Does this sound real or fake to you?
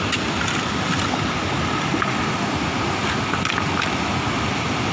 real